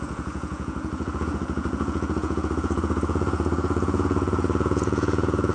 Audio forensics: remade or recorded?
remade